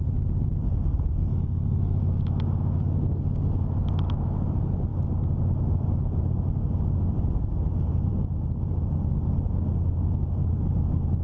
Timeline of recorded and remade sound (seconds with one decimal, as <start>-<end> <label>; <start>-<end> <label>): 0.0-1.3 recorded; 1.3-2.0 remade; 2.0-11.2 recorded